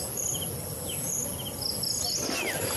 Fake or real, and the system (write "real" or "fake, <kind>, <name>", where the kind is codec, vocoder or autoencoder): real